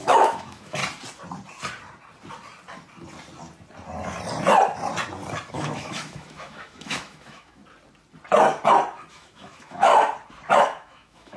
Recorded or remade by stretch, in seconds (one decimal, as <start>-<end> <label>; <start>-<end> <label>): 0.0-0.8 remade; 0.8-5.5 recorded; 5.5-7.6 remade; 7.6-9.1 recorded; 9.1-9.9 remade; 9.9-10.6 recorded; 10.6-11.4 remade